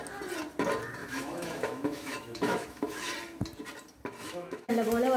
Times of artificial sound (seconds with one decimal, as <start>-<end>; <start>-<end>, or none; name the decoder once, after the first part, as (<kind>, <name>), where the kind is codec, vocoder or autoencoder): 1.0-3.1 (autoencoder, DAC-VAE); 4.2-4.7